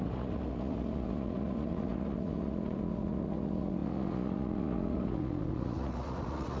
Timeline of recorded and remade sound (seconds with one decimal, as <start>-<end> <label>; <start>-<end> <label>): 0.0-6.6 remade